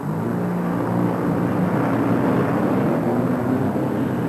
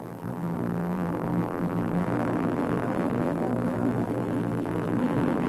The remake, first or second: second